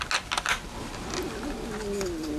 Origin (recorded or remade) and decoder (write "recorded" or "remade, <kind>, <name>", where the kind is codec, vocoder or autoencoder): recorded